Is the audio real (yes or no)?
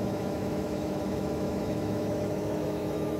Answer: no